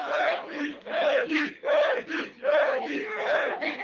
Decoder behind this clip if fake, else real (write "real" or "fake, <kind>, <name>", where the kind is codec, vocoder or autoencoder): fake, codec, HILCodec